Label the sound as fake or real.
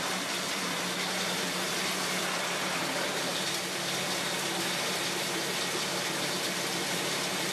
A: fake